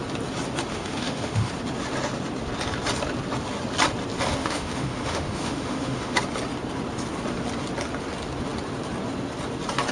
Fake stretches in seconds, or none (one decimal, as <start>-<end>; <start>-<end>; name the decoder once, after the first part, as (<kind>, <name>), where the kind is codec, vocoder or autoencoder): 0.7-1.5 (autoencoder, DAC-VAE); 4.4-6.2